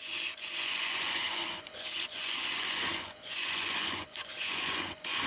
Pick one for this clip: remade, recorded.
remade